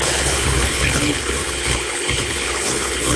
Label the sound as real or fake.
fake